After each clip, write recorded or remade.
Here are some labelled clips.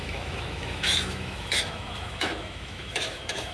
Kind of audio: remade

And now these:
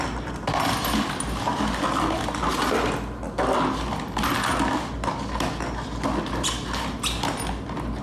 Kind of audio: recorded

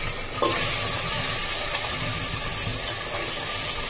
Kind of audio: recorded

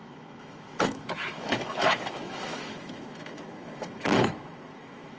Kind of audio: remade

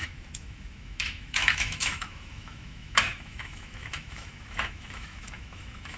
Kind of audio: remade